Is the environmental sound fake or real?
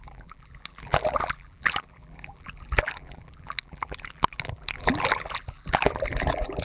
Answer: fake